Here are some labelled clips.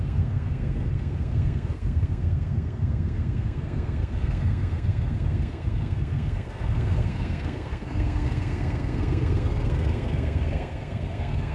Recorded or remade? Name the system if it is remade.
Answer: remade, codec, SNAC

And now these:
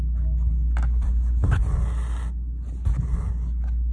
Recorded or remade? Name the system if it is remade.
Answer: recorded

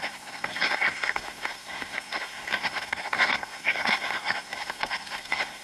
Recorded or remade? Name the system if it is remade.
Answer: remade, codec, SNAC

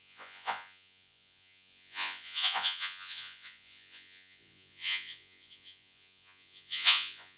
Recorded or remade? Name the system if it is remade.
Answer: remade, vocoder, Vocos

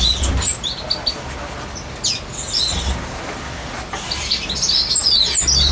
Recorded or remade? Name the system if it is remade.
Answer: recorded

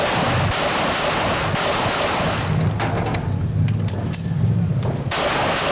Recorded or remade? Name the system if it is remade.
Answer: recorded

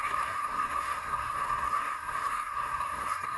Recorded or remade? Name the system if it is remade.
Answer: remade, codec, SNAC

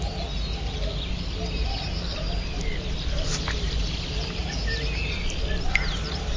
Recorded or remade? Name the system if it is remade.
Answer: recorded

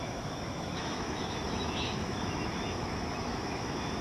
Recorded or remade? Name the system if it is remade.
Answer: remade, autoencoder, DAC-VAE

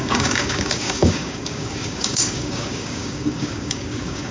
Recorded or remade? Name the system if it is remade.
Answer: remade, codec, DAC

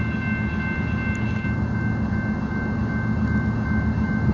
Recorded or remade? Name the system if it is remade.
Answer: recorded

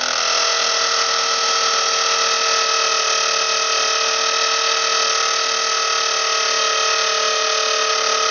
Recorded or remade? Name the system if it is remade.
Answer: recorded